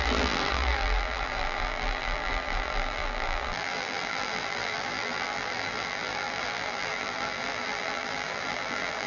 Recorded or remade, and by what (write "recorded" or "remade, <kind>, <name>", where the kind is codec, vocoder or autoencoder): remade, vocoder, BigVGAN v2